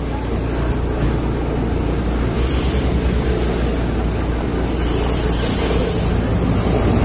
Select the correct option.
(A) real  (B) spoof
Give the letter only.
A